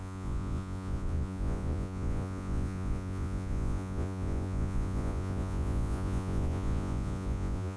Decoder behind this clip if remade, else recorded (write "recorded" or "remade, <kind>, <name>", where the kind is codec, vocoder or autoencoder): remade, vocoder, Vocos